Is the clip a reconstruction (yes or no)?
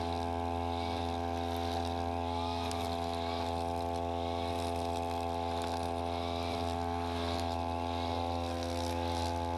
no